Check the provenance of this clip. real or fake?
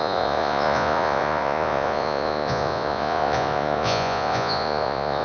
fake